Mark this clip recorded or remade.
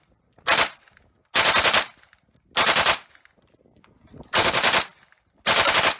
recorded